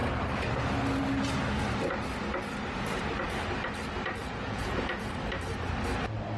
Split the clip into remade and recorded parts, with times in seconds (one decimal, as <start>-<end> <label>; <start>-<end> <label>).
0.0-4.2 recorded; 4.2-5.1 remade; 5.1-6.4 recorded